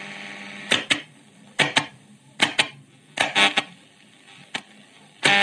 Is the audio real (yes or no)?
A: yes